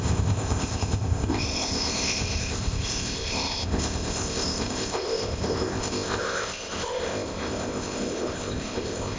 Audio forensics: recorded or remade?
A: remade